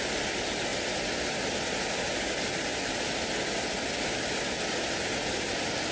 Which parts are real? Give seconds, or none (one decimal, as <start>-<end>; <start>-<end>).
0.0-5.9